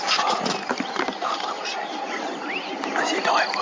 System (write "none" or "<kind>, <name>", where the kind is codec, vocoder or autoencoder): none